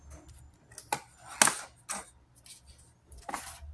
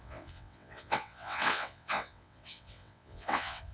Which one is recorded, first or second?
first